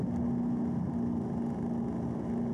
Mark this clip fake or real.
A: real